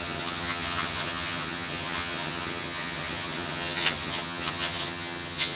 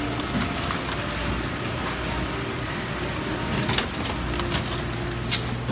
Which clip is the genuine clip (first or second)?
second